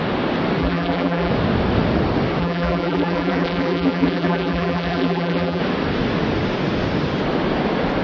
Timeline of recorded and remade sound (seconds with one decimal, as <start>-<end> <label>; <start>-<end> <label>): 0.0-0.6 recorded; 0.6-1.3 remade; 1.3-2.4 recorded; 2.4-5.6 remade; 5.6-8.0 recorded